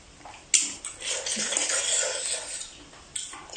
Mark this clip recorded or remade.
recorded